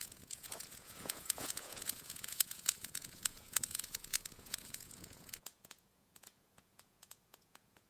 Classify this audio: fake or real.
fake